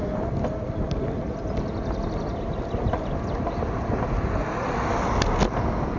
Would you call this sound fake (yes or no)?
no